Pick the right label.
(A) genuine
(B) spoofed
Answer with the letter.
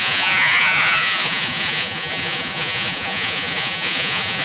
B